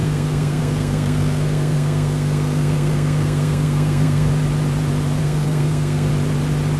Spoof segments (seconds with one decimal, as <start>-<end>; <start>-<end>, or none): 0.0-4.3; 5.2-6.1